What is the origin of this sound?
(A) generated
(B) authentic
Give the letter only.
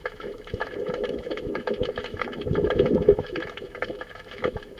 A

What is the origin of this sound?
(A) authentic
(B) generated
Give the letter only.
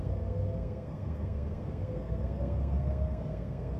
B